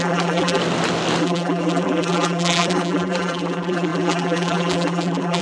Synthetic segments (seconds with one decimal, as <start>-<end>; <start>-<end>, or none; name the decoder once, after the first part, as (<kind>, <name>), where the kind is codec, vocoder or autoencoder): 0.0-0.6 (vocoder, BigVGAN v2); 1.2-5.4